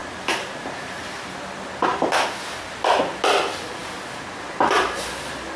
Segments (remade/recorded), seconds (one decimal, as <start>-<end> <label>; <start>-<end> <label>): 0.0-0.7 remade; 0.7-5.6 recorded